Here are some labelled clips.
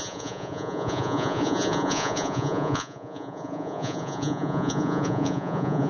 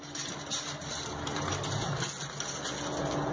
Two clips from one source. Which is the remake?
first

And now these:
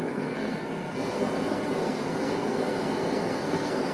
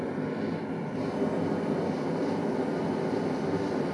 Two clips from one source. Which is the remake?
first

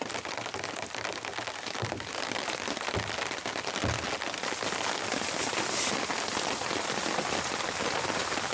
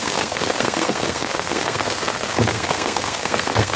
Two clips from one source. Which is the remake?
second